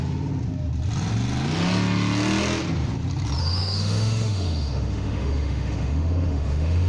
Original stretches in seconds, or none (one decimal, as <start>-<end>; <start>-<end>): 0.0-3.4